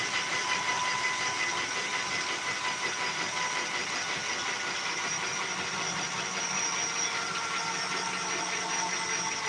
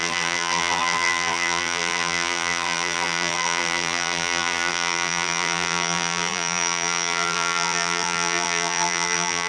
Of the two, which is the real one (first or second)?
first